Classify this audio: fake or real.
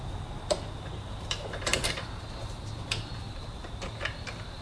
fake